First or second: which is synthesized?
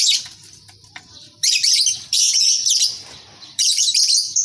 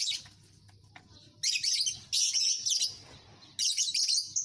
first